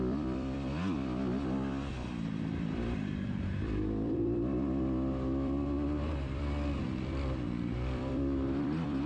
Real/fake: fake